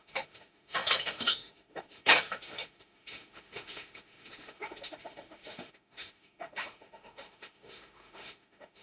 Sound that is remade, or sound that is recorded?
remade